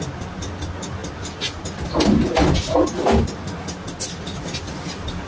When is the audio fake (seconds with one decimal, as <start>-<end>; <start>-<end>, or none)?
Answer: none

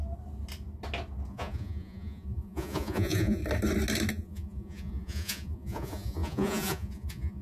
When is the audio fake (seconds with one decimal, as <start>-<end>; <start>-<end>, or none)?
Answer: 1.3-3.4; 4.1-7.4